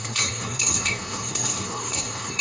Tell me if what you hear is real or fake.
fake